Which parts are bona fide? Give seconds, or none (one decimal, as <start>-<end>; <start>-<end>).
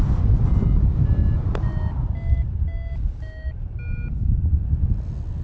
0.0-5.4